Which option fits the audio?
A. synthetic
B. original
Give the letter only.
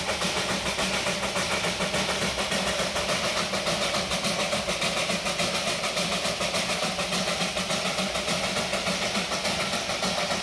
B